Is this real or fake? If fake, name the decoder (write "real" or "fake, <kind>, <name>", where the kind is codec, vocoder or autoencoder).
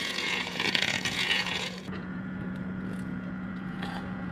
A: fake, vocoder, Vocos